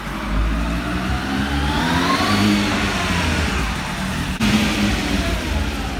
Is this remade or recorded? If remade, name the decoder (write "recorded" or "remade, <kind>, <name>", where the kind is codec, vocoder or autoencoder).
recorded